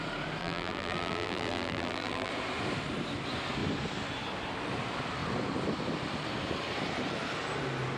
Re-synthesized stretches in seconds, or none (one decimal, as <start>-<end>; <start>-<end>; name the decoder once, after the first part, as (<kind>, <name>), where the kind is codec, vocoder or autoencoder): 0.4-2.3 (vocoder, BigVGAN v2)